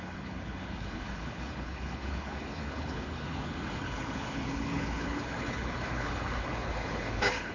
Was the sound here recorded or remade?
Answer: remade